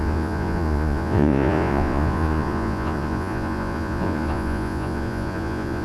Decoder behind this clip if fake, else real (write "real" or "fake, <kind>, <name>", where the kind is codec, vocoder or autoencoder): fake, vocoder, Vocos